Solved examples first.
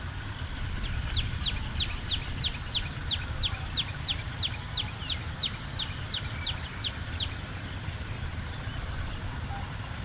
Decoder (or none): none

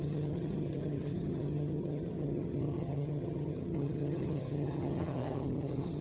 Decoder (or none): vocoder, HiFi-GAN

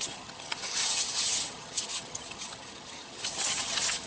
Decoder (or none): vocoder, HiFi-GAN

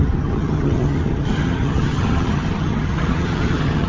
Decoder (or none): vocoder, HiFi-GAN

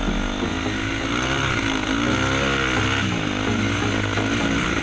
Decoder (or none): none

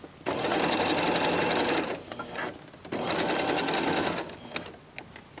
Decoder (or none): none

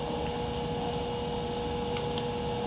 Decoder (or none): none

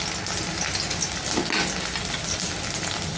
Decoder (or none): none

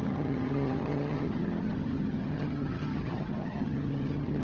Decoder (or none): vocoder, HiFi-GAN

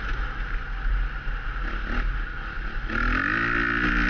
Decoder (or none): none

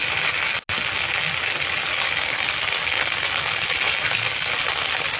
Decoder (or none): none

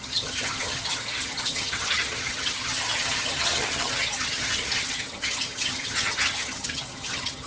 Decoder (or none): vocoder, HiFi-GAN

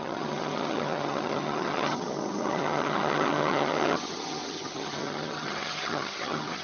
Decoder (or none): vocoder, HiFi-GAN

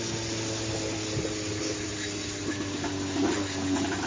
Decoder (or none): none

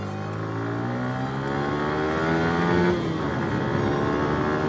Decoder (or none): none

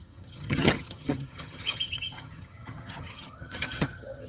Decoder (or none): vocoder, HiFi-GAN